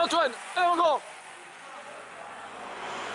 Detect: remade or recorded remade